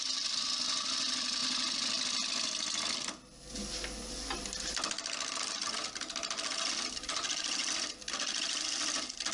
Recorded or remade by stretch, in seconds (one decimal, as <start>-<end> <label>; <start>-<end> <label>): 0.0-1.4 remade; 1.4-6.7 recorded; 6.7-7.6 remade; 7.6-9.3 recorded